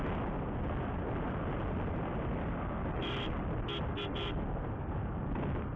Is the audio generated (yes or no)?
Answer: no